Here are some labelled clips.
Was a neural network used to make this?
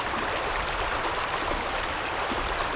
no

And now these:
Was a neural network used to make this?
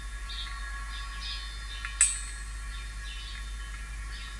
no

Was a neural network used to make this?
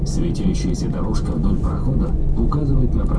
yes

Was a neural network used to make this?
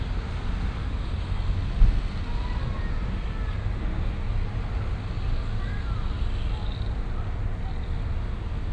no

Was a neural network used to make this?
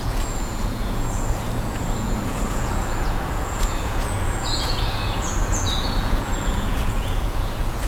yes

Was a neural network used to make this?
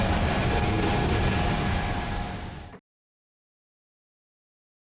no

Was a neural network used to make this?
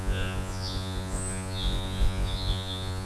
yes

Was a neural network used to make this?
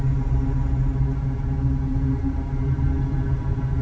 no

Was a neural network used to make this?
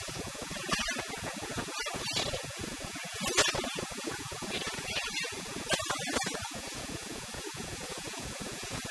yes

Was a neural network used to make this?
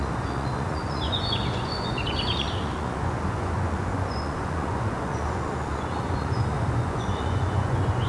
yes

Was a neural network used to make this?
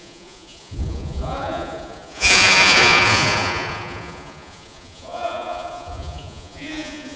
yes